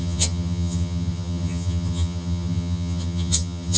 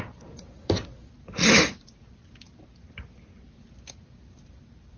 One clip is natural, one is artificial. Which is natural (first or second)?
second